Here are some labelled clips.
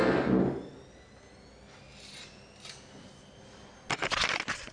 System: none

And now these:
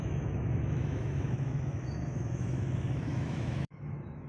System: autoencoder, DAC-VAE